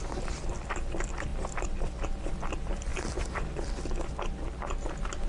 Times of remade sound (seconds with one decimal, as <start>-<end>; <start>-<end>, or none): none